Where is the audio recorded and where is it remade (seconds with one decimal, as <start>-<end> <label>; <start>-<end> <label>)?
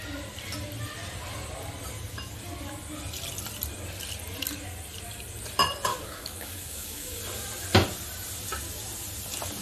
0.0-5.9 recorded; 5.9-7.2 remade; 7.2-9.6 recorded